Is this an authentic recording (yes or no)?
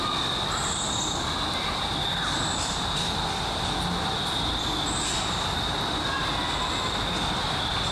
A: yes